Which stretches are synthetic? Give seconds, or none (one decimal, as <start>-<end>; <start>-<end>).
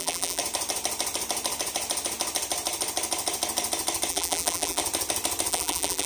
0.0-0.4; 4.1-4.8; 5.5-6.1